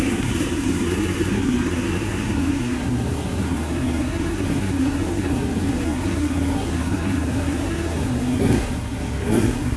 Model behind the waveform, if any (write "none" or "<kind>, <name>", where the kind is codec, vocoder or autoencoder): codec, SNAC